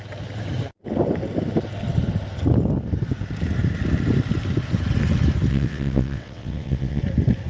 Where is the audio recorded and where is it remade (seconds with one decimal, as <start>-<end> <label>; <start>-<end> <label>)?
0.0-5.5 recorded; 5.5-7.0 remade; 7.0-7.5 recorded